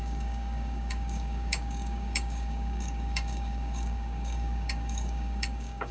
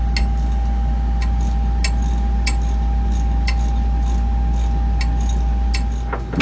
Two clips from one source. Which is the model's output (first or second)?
first